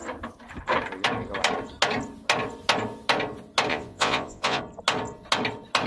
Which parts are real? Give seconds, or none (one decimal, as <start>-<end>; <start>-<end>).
0.0-3.7; 4.6-5.9